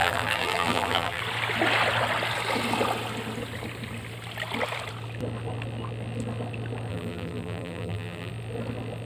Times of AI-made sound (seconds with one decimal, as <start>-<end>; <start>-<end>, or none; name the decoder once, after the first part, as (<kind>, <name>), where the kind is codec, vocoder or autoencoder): 0.0-1.2 (vocoder, BigVGAN v2); 6.9-8.3